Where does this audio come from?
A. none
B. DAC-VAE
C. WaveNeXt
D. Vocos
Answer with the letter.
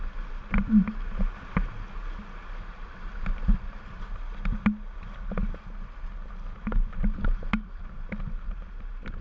A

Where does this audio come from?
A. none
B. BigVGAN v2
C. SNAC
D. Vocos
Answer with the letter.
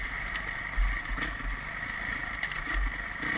A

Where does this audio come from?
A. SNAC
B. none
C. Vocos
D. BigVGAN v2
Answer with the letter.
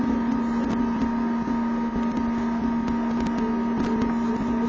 B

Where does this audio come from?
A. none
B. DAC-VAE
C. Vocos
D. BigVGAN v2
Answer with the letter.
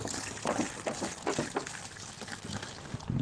A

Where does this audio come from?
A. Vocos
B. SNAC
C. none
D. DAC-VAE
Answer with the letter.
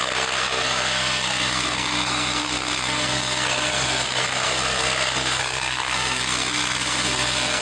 B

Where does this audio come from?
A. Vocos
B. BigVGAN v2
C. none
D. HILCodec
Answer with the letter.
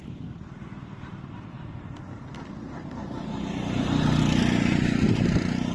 B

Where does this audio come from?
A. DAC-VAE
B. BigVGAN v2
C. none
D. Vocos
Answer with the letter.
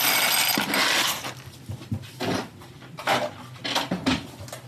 C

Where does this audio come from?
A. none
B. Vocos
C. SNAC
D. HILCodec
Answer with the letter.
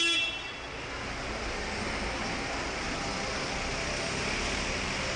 A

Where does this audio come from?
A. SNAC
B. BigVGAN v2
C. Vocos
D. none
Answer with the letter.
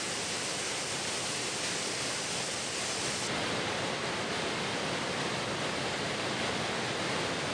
D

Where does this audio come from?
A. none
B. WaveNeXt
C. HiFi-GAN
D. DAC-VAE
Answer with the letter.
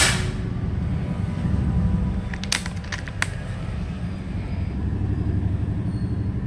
A